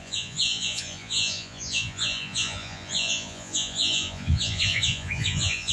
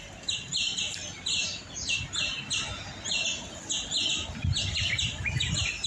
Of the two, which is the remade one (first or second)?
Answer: first